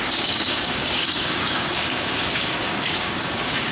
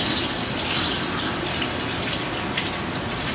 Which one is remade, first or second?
first